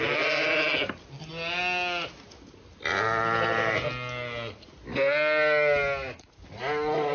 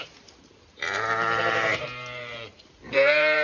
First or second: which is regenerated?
second